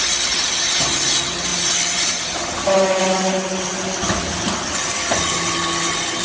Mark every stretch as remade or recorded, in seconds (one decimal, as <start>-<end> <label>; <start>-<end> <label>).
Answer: 0.0-6.2 recorded